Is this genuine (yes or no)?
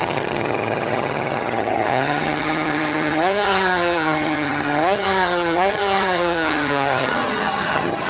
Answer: no